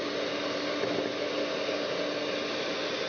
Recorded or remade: recorded